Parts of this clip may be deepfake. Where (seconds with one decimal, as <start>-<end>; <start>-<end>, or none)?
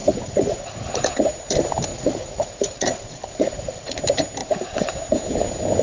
0.0-0.9; 1.9-4.0; 4.4-4.9